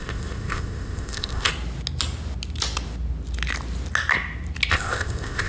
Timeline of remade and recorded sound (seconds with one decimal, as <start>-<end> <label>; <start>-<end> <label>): 0.0-1.5 remade; 1.5-4.7 recorded; 4.7-5.5 remade